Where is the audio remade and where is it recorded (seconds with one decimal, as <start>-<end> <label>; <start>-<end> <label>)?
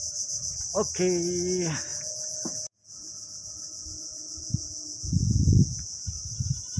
0.0-1.9 recorded; 1.9-6.0 remade; 6.0-6.8 recorded